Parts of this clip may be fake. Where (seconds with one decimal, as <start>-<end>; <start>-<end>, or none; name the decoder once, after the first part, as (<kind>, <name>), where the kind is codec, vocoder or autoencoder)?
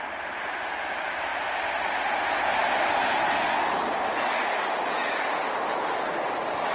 none